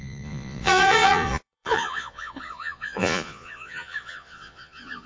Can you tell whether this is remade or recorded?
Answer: remade